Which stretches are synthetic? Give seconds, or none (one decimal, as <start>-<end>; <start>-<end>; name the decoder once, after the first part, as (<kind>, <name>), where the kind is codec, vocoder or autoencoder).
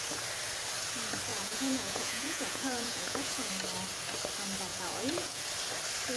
1.3-3.5 (vocoder, Vocos); 4.7-5.4